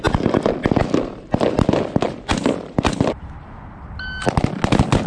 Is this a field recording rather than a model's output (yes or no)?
yes